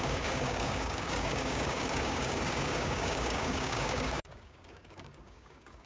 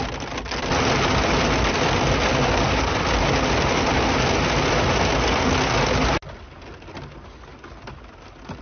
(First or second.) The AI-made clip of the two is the first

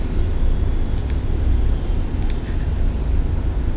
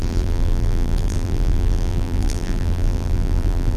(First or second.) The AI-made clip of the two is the second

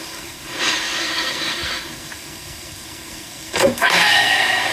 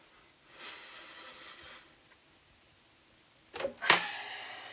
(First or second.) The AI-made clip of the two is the first